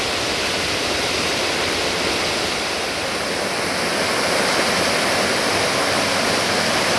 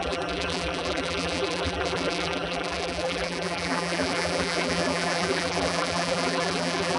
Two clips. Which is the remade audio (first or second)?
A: second